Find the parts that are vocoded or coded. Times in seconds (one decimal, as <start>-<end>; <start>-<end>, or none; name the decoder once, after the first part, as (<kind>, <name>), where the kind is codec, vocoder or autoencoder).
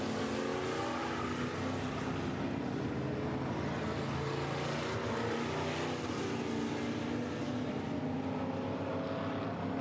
none